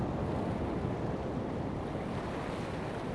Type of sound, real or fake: real